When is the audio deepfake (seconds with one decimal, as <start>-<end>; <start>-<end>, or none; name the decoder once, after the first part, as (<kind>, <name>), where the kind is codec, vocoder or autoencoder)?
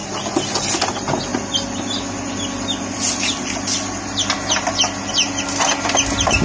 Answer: none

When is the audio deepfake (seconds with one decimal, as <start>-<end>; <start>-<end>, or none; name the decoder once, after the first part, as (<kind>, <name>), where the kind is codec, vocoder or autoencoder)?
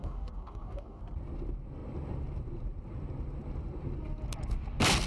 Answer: 0.0-1.0 (codec, DAC)